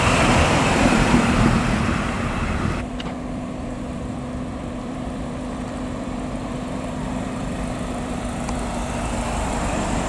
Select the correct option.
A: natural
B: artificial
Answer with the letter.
B